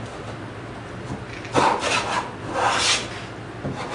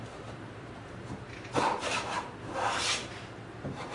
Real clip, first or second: first